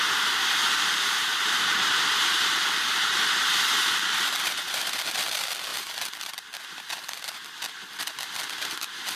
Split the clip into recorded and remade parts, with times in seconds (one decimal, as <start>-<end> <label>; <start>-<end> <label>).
0.0-0.6 recorded; 0.6-5.0 remade; 5.0-5.7 recorded; 5.7-6.3 remade; 6.3-9.2 recorded